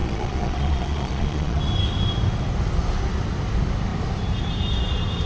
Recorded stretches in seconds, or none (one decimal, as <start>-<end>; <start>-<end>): 1.6-5.3